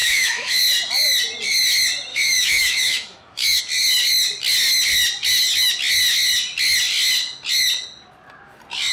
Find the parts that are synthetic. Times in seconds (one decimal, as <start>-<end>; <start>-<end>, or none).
0.0-0.6; 2.1-3.6